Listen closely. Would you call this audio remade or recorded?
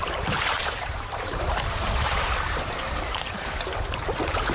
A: remade